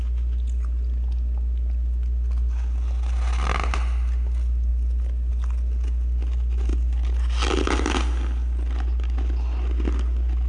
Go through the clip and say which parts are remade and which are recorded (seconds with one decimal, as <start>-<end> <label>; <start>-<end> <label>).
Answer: 0.0-10.5 recorded